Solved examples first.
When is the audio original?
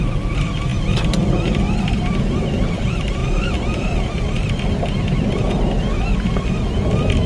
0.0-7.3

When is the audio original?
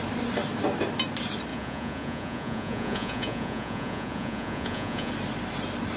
0.0-1.5; 5.1-6.0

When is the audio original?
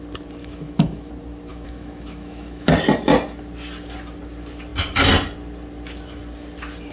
0.0-0.4; 1.1-1.5; 2.7-6.9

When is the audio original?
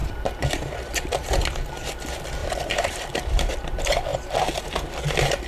1.3-2.4; 3.5-4.1; 5.0-5.5